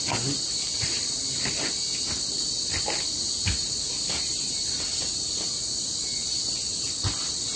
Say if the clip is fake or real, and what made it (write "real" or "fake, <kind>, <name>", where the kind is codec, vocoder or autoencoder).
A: real